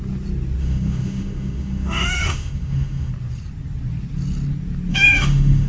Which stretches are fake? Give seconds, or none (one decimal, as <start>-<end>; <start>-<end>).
0.6-3.1; 4.9-5.7